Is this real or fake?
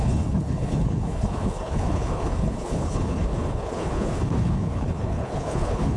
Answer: fake